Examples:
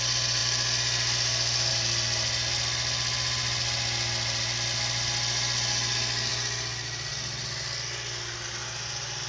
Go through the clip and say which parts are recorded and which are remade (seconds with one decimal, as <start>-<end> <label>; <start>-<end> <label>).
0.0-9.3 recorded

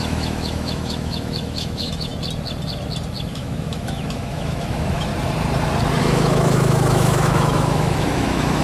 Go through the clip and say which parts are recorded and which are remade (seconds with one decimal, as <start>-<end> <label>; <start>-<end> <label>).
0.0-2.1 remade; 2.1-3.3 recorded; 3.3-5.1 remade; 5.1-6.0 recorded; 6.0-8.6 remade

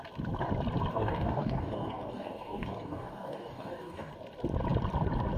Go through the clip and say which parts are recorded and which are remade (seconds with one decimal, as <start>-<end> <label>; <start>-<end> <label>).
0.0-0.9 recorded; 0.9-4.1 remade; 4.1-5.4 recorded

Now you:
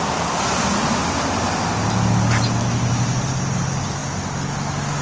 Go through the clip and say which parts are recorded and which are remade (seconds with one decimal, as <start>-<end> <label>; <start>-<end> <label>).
0.0-5.0 recorded

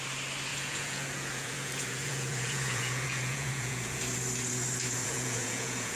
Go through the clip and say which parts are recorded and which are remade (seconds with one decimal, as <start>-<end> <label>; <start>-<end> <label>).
0.0-0.5 recorded; 0.5-4.0 remade; 4.0-5.0 recorded; 5.0-6.0 remade